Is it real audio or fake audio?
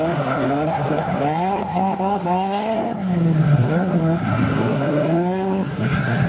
fake